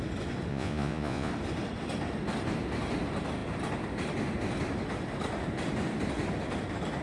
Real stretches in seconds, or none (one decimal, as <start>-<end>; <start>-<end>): 0.0-0.5; 1.3-7.0

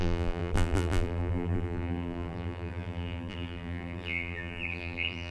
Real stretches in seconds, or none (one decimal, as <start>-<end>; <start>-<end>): none

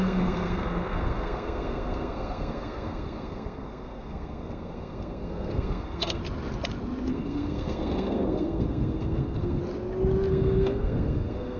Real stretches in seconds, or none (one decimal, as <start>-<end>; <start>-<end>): 6.2-7.1; 9.6-10.3

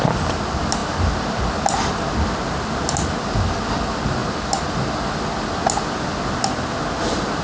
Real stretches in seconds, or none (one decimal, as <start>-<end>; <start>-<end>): 0.0-7.4

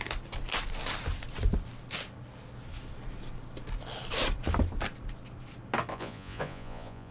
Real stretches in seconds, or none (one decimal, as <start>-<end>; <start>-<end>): 0.0-5.9